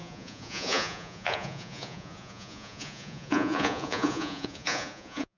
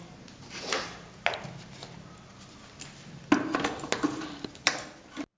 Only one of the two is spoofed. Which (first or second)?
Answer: first